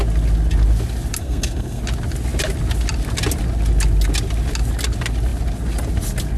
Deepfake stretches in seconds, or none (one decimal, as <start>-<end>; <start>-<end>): 1.2-1.8

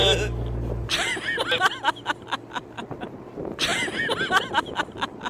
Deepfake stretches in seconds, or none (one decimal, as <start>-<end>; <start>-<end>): none

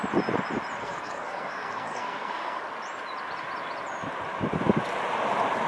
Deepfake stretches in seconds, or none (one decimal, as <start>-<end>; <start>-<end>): 0.8-2.6

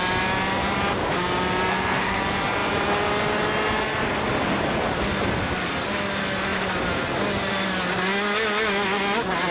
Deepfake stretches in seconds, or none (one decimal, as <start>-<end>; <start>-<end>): 1.7-2.2

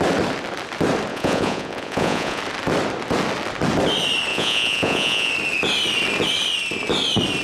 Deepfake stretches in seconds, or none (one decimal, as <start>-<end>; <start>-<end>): 1.1-2.4; 4.3-5.3